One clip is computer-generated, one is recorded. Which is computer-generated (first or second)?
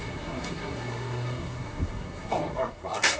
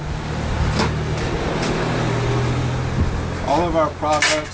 first